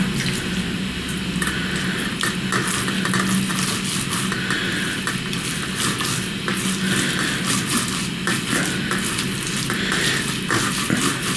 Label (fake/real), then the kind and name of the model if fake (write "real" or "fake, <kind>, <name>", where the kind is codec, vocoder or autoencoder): real